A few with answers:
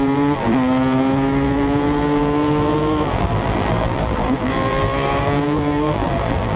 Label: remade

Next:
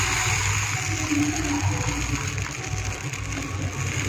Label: recorded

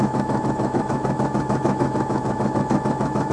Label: remade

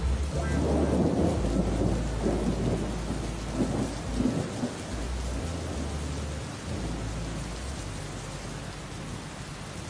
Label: recorded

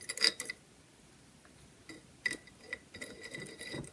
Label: recorded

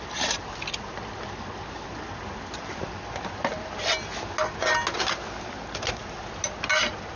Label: recorded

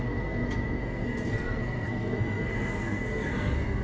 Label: remade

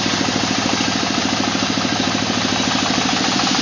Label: remade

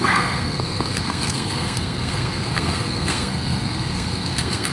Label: remade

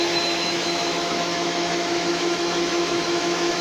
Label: remade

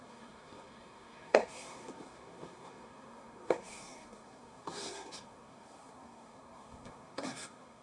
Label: remade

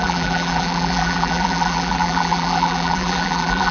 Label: remade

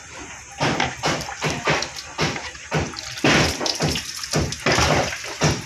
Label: recorded